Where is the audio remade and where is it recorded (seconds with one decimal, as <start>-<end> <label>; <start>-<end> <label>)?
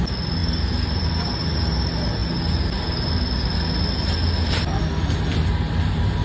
0.0-6.2 recorded